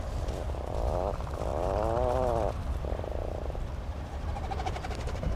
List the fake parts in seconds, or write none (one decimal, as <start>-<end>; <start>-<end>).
1.5-3.6